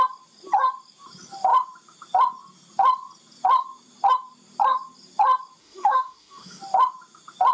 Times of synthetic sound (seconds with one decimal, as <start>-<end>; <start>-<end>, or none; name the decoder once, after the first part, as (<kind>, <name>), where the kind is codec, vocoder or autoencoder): 5.6-6.6 (autoencoder, DAC-VAE)